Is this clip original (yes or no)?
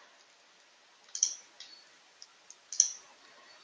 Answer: yes